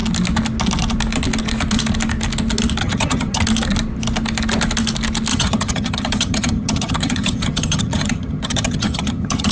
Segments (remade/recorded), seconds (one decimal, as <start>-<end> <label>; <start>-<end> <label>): 0.0-2.8 recorded; 2.8-3.4 remade; 3.4-5.3 recorded; 5.3-9.5 remade